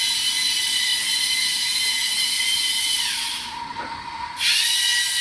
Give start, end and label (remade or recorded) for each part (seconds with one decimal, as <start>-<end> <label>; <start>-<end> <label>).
0.0-5.2 recorded